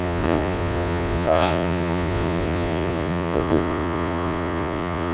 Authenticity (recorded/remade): remade